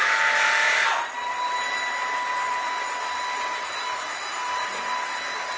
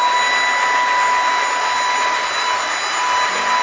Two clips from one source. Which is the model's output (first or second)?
first